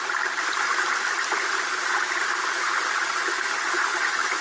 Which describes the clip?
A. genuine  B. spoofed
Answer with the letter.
A